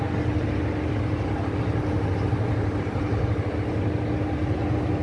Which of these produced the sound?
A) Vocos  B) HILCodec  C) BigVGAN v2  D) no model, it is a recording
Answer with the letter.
D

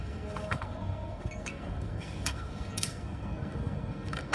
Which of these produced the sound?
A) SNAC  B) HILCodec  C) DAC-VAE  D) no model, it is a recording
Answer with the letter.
A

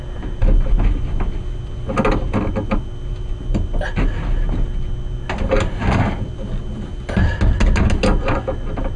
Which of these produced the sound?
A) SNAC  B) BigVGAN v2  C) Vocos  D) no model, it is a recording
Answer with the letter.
D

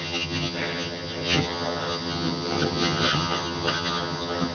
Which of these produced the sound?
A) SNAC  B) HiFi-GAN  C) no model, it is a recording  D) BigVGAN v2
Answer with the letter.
B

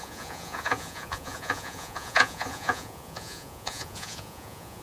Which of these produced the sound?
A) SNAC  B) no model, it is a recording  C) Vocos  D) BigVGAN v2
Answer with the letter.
C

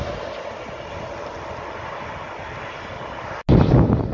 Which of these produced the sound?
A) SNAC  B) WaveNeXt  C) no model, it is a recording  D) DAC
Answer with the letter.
C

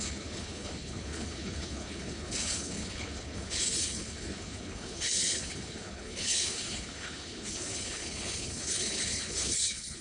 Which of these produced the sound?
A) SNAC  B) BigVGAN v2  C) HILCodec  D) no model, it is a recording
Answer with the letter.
C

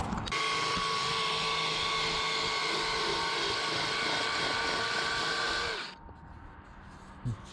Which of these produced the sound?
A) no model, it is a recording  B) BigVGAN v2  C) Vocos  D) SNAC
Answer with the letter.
A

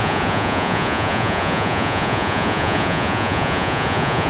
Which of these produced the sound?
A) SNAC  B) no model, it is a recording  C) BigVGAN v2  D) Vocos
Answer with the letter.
D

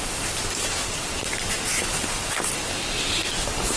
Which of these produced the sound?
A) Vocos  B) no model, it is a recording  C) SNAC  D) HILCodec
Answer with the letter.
B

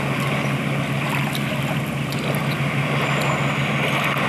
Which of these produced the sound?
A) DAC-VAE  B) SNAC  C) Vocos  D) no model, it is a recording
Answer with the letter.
D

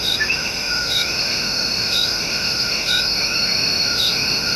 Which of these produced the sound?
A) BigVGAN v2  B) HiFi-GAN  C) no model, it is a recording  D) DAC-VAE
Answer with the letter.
D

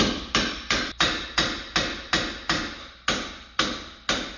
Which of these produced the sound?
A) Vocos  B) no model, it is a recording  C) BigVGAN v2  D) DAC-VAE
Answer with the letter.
B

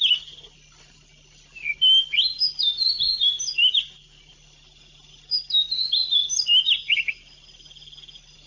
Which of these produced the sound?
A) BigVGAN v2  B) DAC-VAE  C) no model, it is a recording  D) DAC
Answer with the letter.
C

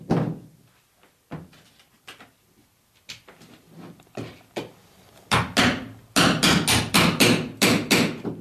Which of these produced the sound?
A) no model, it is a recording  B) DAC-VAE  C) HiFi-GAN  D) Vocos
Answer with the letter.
A